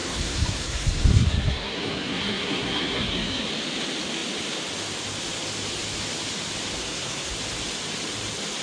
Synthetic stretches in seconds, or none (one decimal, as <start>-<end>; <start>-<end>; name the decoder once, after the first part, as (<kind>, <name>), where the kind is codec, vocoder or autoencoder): 0.0-3.5 (codec, SNAC); 6.8-7.3